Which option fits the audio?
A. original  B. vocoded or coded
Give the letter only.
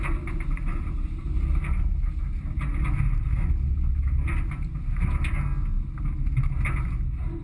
A